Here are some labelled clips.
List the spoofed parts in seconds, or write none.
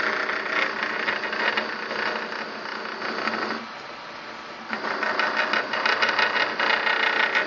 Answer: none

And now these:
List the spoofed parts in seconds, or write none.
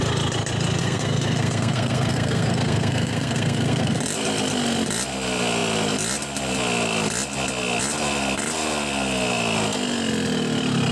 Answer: 0.8-4.0 (codec, SNAC)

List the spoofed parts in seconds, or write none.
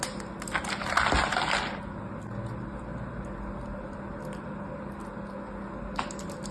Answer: none